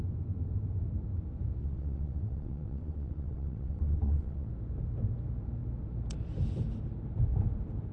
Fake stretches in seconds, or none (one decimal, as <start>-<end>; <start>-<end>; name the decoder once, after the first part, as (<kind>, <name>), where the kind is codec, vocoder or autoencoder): 1.6-4.5 (vocoder, WaveNeXt)